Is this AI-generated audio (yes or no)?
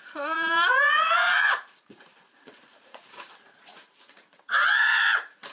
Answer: yes